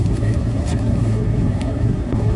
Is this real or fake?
fake